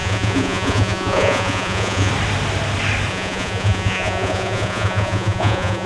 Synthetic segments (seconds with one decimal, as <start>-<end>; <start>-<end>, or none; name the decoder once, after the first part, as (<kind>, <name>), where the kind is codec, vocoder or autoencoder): 0.0-2.1 (vocoder, Vocos); 3.1-5.9